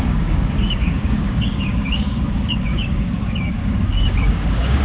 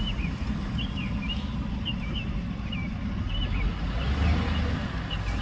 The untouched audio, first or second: second